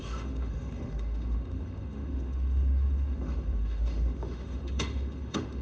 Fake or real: fake